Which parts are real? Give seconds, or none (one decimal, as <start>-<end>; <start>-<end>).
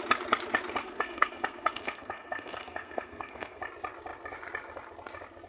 0.0-0.8; 3.6-5.5